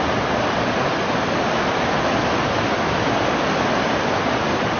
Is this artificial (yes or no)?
no